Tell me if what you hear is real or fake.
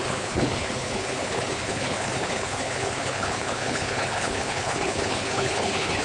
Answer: fake